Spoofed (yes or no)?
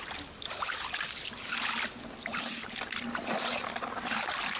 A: no